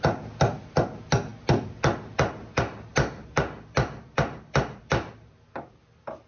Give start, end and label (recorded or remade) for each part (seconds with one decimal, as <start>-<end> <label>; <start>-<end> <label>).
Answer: 0.0-2.9 recorded; 2.9-5.3 remade; 5.3-6.3 recorded